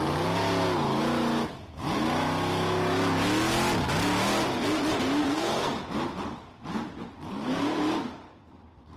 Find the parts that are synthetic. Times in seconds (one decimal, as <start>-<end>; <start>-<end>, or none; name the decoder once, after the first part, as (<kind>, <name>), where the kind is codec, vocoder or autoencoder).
5.2-5.8 (codec, SNAC)